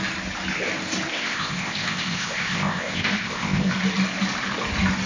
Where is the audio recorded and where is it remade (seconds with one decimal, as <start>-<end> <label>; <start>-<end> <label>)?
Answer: 0.0-1.1 recorded; 1.1-3.7 remade; 3.7-5.1 recorded